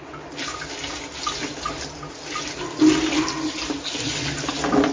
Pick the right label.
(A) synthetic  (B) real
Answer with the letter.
B